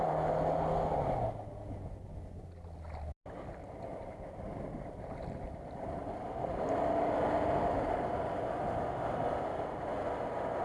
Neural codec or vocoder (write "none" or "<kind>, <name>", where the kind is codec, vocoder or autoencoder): none